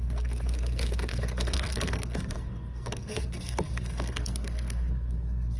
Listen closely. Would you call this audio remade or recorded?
remade